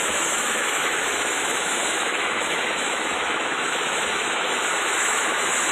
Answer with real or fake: fake